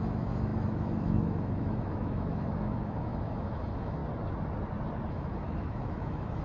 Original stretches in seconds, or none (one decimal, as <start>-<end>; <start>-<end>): 4.0-5.1